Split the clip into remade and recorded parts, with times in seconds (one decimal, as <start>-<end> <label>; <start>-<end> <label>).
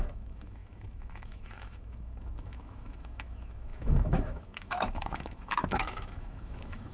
0.0-6.9 remade